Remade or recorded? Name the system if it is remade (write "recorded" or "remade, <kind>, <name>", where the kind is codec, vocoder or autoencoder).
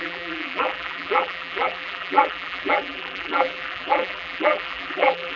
remade, vocoder, BigVGAN v2